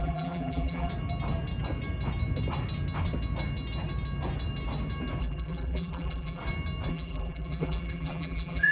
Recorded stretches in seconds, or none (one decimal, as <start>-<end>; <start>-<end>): 0.9-5.2; 6.4-6.9